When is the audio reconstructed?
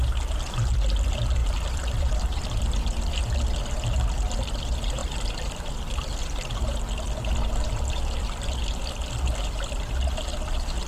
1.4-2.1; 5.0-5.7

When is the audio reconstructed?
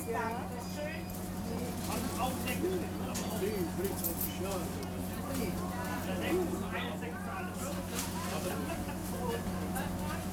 none